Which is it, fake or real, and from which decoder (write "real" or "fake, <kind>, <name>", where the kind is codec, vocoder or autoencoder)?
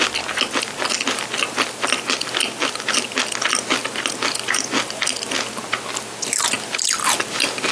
real